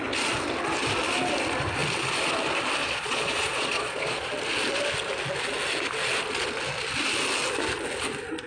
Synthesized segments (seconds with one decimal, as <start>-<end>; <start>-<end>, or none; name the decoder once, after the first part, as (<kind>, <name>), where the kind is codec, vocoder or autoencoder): 2.8-4.3 (vocoder, Vocos)

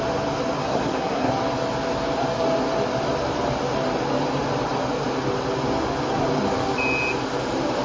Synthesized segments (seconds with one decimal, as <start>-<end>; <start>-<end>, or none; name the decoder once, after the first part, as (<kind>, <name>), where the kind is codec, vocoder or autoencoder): 0.6-1.3 (codec, SNAC)